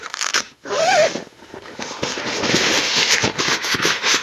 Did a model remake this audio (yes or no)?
yes